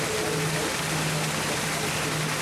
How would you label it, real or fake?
real